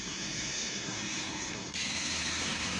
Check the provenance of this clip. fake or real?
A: fake